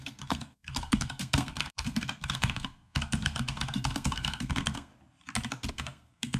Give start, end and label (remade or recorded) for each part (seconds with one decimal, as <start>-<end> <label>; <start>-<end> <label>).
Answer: 0.0-4.9 remade; 4.9-5.7 recorded; 5.7-6.4 remade